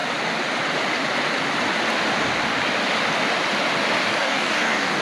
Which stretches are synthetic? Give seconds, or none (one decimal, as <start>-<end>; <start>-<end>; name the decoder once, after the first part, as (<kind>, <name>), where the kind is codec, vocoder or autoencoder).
4.2-5.0 (codec, DAC)